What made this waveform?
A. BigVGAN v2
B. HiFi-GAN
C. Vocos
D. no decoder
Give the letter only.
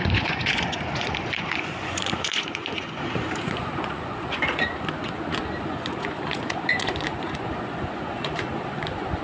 C